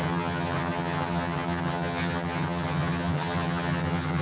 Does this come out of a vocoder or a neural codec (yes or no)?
yes